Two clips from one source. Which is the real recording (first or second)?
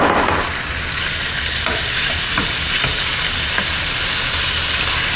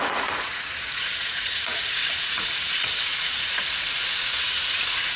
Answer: first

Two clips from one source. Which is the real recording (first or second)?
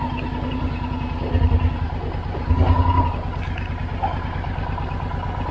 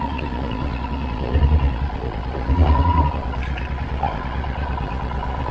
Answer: first